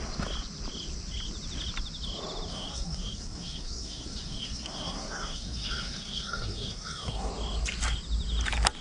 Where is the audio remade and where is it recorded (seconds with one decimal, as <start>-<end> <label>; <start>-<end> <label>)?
0.0-2.5 recorded; 2.5-7.3 remade; 7.3-8.8 recorded